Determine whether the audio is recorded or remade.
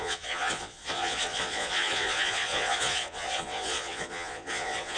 remade